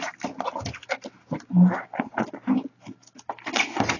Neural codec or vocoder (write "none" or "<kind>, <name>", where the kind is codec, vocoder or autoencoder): none